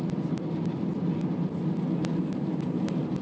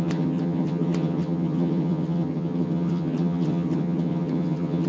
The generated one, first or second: second